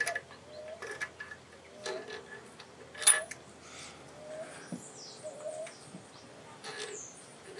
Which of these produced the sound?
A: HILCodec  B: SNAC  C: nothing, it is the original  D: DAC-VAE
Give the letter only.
C